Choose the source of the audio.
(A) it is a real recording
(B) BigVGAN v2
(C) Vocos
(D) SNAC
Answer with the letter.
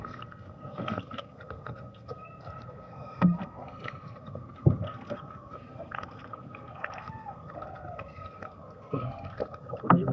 D